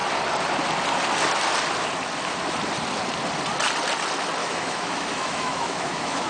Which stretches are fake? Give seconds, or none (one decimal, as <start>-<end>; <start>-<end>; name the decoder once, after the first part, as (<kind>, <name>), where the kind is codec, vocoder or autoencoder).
4.4-6.3 (autoencoder, DAC-VAE)